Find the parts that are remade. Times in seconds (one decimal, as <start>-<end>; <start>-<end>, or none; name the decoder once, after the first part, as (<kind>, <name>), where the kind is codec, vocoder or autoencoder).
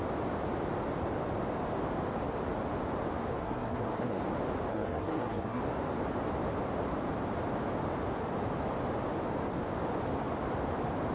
3.4-4.2 (codec, SNAC); 4.7-5.6